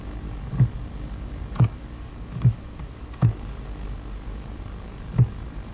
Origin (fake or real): fake